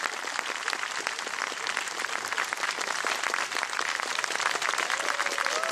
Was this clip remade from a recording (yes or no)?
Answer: no